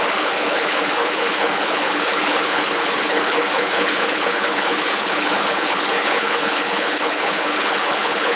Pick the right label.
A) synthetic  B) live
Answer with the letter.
A